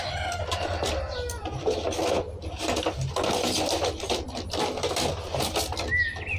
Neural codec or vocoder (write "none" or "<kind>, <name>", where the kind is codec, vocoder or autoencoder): none